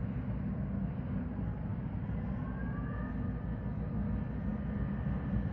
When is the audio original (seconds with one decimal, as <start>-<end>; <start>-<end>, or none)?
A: 0.0-5.5

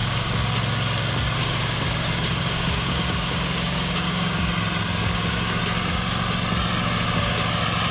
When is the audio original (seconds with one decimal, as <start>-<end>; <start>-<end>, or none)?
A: 0.6-1.4; 4.4-5.0; 5.6-7.9